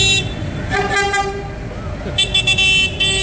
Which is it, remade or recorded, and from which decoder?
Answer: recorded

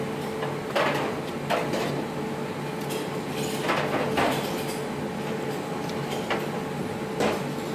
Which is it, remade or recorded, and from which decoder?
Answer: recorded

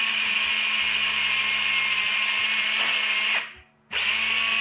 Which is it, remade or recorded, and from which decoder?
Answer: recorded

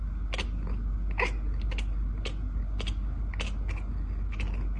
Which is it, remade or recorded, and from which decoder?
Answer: recorded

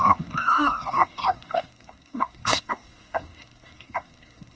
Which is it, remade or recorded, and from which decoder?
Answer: remade, codec, SNAC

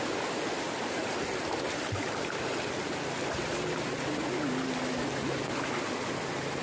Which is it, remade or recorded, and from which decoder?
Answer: recorded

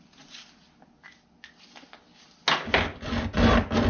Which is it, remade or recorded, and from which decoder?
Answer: recorded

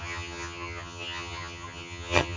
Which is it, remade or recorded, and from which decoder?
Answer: remade, vocoder, HiFi-GAN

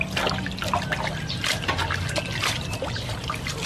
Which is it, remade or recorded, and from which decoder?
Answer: recorded